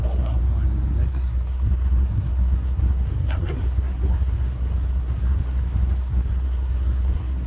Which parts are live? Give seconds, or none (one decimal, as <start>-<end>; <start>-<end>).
0.4-1.1